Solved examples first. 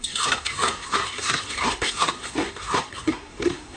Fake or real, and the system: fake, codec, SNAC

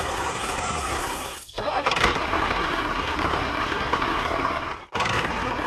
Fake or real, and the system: fake, codec, SNAC